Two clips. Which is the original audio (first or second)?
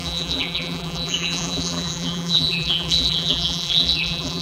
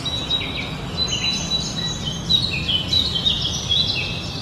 second